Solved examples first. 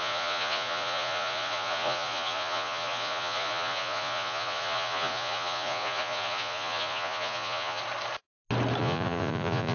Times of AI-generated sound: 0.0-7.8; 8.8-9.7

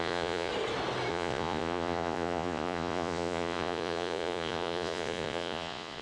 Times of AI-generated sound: 0.0-0.5; 1.1-6.0